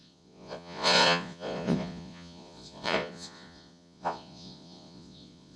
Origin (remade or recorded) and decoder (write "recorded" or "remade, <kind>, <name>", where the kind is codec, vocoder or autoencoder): remade, vocoder, Vocos